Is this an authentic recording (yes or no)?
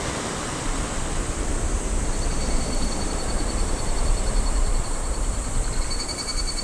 no